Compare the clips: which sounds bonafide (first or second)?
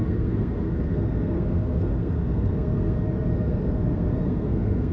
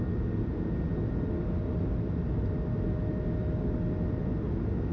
second